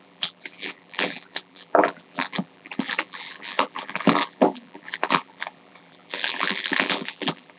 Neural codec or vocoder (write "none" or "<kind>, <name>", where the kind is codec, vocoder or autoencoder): vocoder, BigVGAN v2